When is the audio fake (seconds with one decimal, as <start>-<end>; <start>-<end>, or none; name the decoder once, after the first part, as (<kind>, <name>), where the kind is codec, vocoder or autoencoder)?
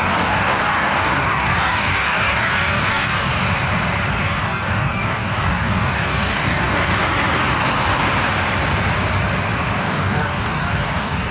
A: 0.0-3.3 (codec, DAC); 4.1-6.9; 9.8-11.3